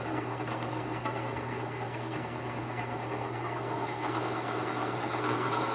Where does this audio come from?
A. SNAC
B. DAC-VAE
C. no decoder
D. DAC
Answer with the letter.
A